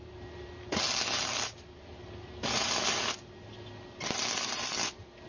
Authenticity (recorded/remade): recorded